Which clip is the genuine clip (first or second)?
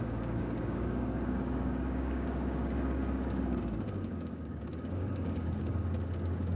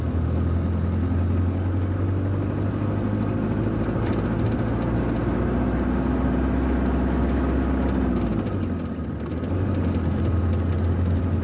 second